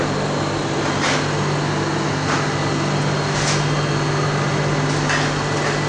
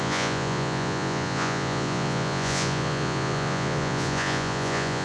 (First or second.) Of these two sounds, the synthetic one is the second